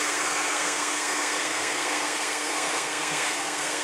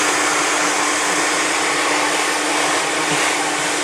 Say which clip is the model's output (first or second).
first